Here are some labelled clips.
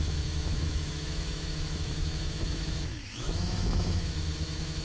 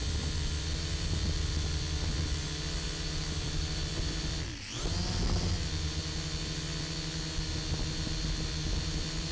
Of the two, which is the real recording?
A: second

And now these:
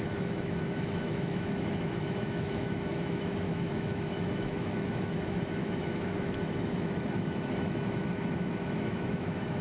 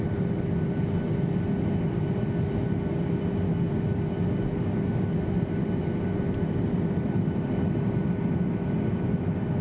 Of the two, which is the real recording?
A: second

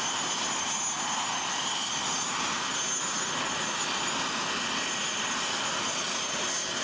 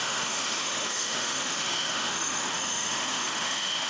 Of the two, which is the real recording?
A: first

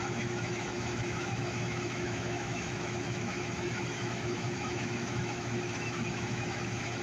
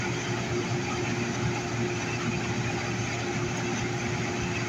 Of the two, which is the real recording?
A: second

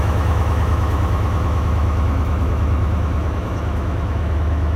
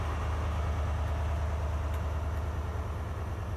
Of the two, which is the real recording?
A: second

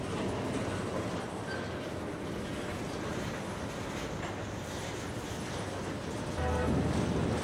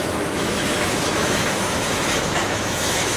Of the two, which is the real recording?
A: first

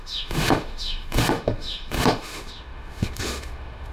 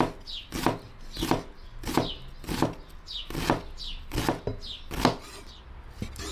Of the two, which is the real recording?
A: second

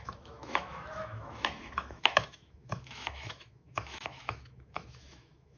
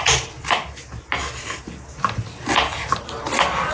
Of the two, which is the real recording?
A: second